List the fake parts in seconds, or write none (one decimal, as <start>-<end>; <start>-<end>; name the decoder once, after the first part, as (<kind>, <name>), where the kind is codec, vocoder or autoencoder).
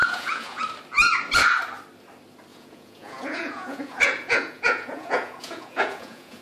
0.0-0.6 (vocoder, Vocos); 2.5-6.4